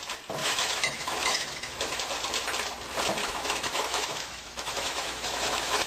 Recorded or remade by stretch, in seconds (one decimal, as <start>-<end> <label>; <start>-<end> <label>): 0.0-0.4 recorded; 0.4-2.0 remade; 2.0-3.2 recorded; 3.2-5.9 remade

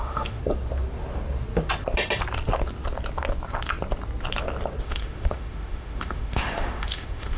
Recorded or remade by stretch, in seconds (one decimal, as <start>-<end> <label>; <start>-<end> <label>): 0.0-0.4 remade; 0.4-4.8 recorded; 4.8-7.4 remade

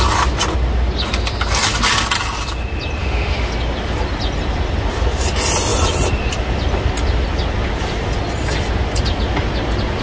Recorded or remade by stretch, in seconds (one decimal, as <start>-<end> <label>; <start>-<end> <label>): 0.0-3.0 recorded; 3.0-3.5 remade; 3.5-10.0 recorded

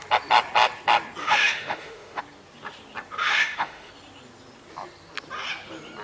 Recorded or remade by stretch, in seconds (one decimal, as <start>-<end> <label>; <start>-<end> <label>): 0.0-1.2 recorded; 1.2-2.2 remade; 2.2-3.2 recorded; 3.2-3.9 remade; 3.9-6.0 recorded

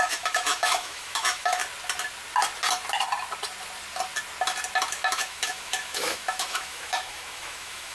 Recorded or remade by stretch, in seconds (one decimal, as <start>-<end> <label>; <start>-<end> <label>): 0.0-1.6 remade; 1.6-4.9 recorded; 4.9-7.9 remade

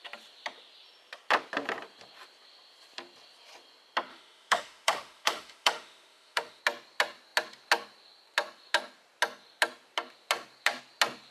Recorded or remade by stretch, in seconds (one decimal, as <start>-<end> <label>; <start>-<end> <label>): 0.0-4.1 recorded; 4.1-6.6 remade; 6.6-11.3 recorded